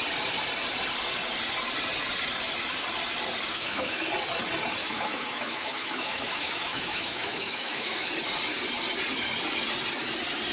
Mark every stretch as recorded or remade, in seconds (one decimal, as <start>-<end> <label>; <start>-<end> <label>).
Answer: 0.0-3.5 recorded; 3.5-4.1 remade; 4.1-4.8 recorded; 4.8-8.1 remade; 8.1-10.5 recorded